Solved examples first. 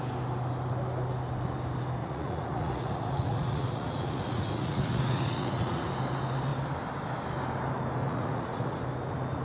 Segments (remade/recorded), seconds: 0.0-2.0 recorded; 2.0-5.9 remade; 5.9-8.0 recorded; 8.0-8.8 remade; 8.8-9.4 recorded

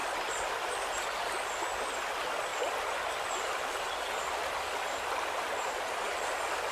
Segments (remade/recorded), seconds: 0.0-6.7 recorded

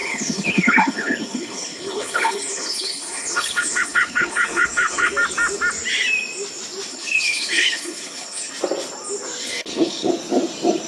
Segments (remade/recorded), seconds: 0.0-5.1 remade; 5.1-6.9 recorded; 6.9-8.5 remade; 8.5-9.4 recorded; 9.4-10.1 remade; 10.1-10.9 recorded

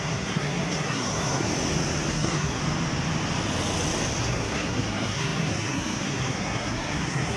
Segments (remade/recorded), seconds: 0.0-1.5 remade; 1.5-2.1 recorded; 2.1-2.6 remade; 2.6-4.2 recorded; 4.2-7.4 remade

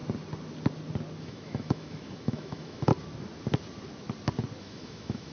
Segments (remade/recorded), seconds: 0.0-1.2 recorded; 1.2-2.9 remade; 2.9-4.6 recorded; 4.6-5.3 remade